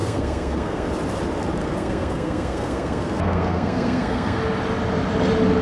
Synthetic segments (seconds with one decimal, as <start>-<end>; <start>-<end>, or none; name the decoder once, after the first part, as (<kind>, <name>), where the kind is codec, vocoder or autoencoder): 0.0-0.9 (codec, SNAC); 1.6-4.4